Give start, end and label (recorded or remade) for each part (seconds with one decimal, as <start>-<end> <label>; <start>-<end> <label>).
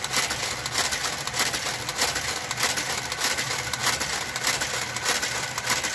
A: 0.0-5.9 recorded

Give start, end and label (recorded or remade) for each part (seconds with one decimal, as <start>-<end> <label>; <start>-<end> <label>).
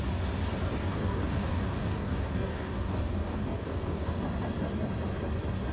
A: 0.0-0.8 recorded; 0.8-4.2 remade; 4.2-5.7 recorded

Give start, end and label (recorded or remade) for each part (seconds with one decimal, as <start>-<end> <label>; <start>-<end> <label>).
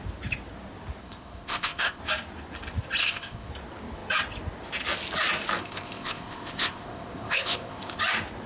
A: 0.0-1.0 recorded; 1.0-2.0 remade; 2.0-3.0 recorded; 3.0-3.5 remade; 3.5-5.6 recorded; 5.6-8.0 remade; 8.0-8.5 recorded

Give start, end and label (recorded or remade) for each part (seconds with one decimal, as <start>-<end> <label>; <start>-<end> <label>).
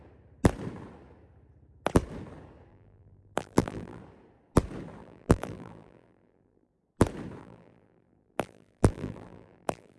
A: 0.0-2.7 recorded; 2.7-4.0 remade; 4.0-5.0 recorded; 5.0-6.7 remade; 6.7-7.4 recorded; 7.4-10.0 remade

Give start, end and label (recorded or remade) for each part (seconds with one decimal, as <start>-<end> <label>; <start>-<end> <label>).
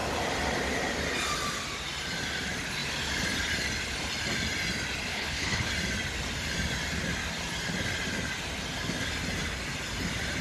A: 0.0-5.1 recorded; 5.1-5.7 remade; 5.7-10.4 recorded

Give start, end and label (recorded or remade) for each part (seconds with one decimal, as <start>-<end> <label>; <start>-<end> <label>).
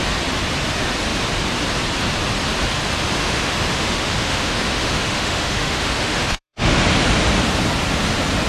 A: 0.0-3.2 recorded; 3.2-6.8 remade; 6.8-8.5 recorded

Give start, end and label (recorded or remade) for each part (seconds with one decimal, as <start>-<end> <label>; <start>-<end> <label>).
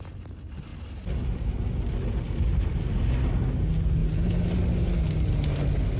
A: 0.0-6.0 recorded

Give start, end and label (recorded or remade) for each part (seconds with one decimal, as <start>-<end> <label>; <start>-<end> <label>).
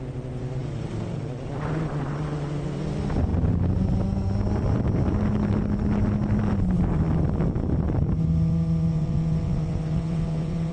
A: 0.0-8.9 recorded; 8.9-10.7 remade